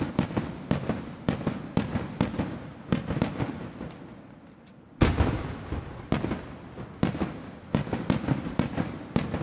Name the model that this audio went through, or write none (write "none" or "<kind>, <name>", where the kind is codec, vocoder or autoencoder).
none